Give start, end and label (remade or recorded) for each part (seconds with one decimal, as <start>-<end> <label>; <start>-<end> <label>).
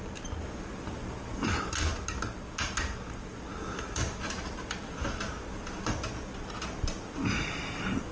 0.0-3.6 recorded; 3.6-5.8 remade; 5.8-8.1 recorded